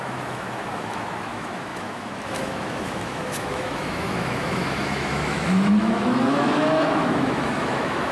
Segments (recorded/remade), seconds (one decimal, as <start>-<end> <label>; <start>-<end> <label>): 0.0-8.1 remade